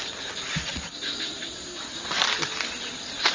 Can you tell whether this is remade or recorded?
remade